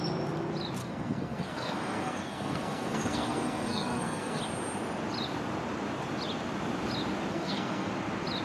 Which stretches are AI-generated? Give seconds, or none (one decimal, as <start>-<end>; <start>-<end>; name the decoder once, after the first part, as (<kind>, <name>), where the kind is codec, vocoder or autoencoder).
0.8-4.4 (codec, SNAC); 7.3-7.9